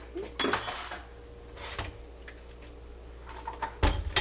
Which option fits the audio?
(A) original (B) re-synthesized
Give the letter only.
A